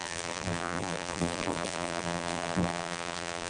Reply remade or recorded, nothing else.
remade